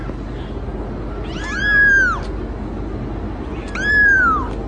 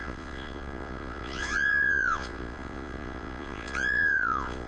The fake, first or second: second